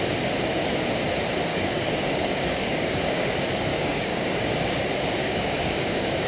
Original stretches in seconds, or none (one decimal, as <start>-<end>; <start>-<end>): 0.0-1.5; 3.3-3.7; 4.8-5.2